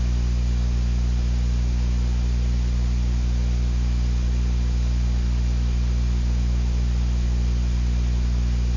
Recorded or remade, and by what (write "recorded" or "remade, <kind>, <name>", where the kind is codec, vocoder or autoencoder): recorded